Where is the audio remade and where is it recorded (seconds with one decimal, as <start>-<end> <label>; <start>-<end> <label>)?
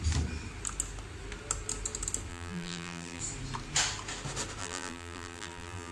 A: 0.0-2.3 recorded; 2.3-3.2 remade; 3.2-4.6 recorded; 4.6-5.9 remade